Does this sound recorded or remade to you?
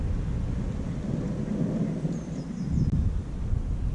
recorded